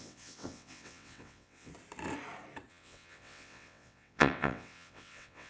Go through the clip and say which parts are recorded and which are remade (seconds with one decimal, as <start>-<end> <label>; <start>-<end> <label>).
0.0-1.7 remade; 1.7-2.7 recorded; 2.7-5.5 remade